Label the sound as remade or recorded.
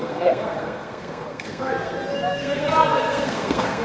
remade